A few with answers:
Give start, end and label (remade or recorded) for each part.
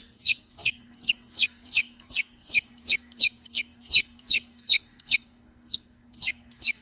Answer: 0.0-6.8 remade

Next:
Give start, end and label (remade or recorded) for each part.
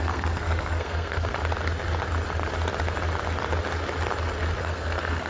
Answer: 0.0-1.4 remade; 1.4-4.6 recorded; 4.6-5.3 remade